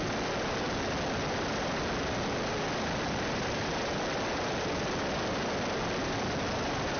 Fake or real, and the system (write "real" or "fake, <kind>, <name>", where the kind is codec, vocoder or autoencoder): real